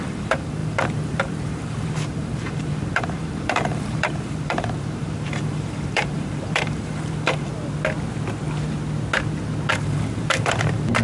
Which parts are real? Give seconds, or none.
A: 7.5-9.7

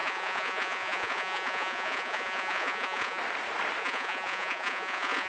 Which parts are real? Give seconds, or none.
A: 3.2-3.8

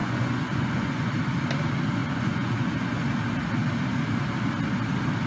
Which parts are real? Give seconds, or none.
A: 1.1-2.0; 3.1-5.3